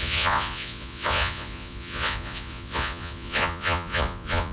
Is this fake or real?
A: fake